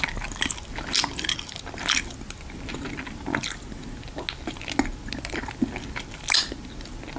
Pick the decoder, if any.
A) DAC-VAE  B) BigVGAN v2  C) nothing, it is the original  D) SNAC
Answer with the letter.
C